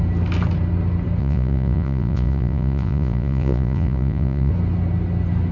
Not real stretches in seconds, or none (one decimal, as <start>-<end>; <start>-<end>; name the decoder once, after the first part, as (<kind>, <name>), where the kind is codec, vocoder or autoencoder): 1.2-4.5 (vocoder, Vocos)